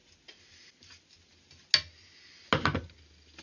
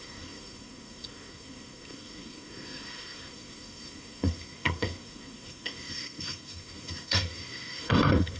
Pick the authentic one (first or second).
first